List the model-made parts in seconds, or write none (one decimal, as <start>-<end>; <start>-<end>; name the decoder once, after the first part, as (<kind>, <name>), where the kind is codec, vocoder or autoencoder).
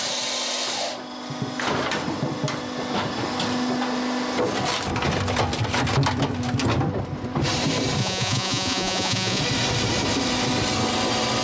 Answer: 8.0-9.4 (vocoder, Vocos)